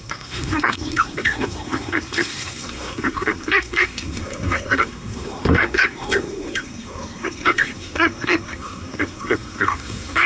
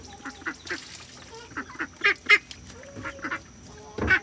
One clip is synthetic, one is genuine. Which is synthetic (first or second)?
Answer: first